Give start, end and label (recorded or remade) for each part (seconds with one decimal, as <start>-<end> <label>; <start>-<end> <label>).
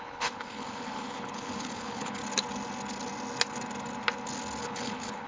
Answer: 0.0-2.2 remade; 2.2-4.6 recorded; 4.6-5.3 remade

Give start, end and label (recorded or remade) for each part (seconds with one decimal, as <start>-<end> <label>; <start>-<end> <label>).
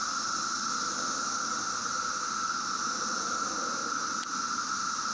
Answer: 0.0-5.1 recorded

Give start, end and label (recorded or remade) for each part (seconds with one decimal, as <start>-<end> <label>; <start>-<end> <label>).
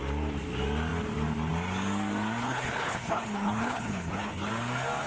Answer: 0.0-2.4 recorded; 2.4-4.5 remade; 4.5-5.1 recorded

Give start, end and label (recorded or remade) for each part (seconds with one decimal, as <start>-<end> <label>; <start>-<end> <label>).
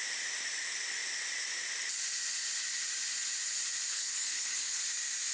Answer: 0.0-3.9 recorded; 3.9-4.8 remade; 4.8-5.3 recorded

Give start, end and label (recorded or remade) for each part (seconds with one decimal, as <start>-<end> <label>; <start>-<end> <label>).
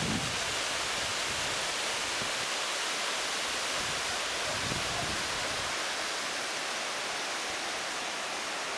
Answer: 0.0-8.8 recorded